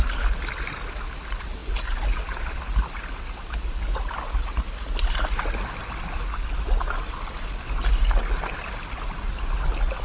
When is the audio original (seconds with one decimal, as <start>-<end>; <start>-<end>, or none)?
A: 0.0-10.0

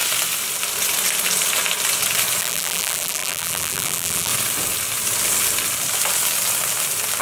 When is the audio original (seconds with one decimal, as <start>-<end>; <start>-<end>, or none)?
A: 0.0-2.4; 4.3-7.2